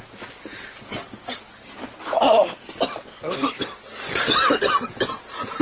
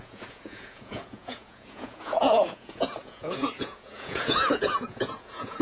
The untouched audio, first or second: first